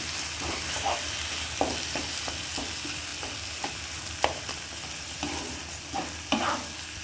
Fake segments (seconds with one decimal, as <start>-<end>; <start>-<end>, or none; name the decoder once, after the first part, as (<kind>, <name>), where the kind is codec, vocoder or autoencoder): none